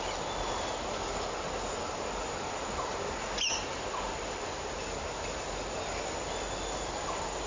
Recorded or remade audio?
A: recorded